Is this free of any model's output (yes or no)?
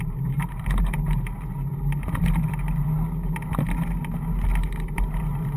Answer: yes